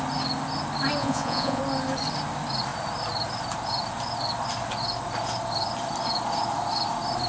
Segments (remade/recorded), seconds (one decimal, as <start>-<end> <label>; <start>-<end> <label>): 0.0-1.0 recorded; 1.0-1.6 remade; 1.6-7.3 recorded